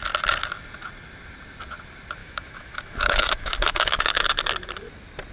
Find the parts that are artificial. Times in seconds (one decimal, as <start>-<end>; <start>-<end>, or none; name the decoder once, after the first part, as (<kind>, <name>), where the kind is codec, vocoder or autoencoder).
2.2-4.2 (autoencoder, DAC-VAE)